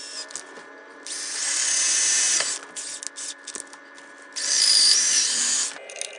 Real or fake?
real